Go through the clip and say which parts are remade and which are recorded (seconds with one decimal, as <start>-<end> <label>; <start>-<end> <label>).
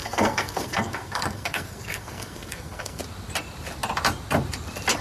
0.0-3.0 remade; 3.0-5.0 recorded